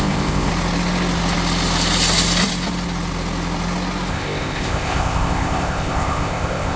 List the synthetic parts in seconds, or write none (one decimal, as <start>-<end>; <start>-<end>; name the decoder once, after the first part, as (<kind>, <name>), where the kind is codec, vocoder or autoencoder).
0.0-0.5 (codec, ZipCodec); 4.1-6.8